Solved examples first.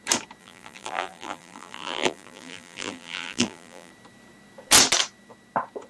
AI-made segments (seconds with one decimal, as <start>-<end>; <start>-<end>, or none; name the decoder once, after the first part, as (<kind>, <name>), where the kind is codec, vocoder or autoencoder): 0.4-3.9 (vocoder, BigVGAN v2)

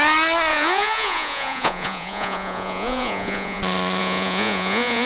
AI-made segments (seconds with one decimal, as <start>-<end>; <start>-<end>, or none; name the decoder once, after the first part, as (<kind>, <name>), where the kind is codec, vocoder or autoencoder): 0.5-3.6 (vocoder, Vocos); 4.0-5.1

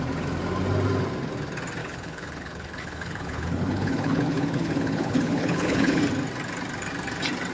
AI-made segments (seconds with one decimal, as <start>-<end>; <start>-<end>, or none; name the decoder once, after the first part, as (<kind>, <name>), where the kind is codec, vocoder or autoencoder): 1.8-6.0 (codec, HILCodec)

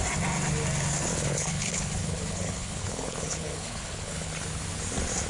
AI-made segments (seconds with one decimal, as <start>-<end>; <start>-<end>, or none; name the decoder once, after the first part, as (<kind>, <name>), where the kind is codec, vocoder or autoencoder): 1.1-4.3 (codec, HILCodec)